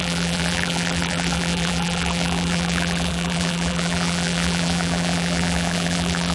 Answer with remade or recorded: remade